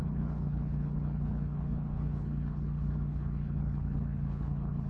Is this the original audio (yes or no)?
no